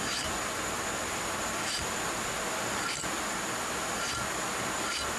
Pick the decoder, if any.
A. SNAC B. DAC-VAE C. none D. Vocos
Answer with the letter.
C